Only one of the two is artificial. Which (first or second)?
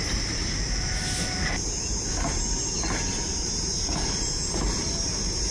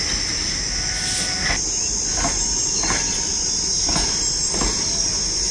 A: first